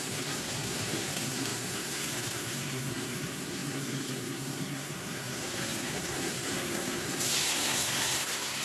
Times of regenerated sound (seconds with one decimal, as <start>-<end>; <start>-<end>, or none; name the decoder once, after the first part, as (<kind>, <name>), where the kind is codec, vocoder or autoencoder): 0.0-8.6 (codec, SNAC)